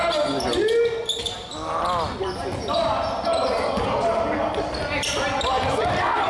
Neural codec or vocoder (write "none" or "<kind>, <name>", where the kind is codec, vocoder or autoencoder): none